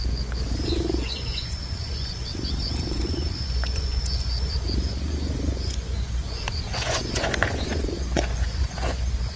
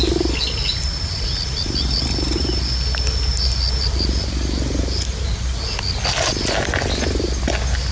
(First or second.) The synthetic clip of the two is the first